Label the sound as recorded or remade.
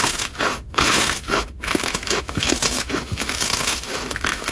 remade